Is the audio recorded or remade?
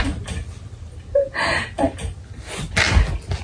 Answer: recorded